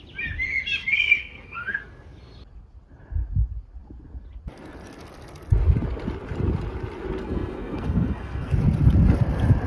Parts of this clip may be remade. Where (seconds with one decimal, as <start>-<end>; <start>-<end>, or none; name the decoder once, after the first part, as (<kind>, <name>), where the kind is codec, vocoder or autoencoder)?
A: 0.8-1.8 (codec, SNAC); 7.2-8.5